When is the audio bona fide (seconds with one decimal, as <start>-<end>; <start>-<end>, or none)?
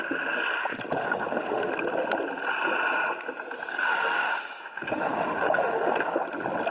0.0-1.0; 1.7-3.7; 6.2-6.7